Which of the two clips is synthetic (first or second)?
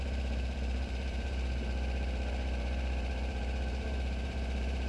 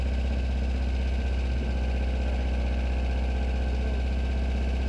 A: first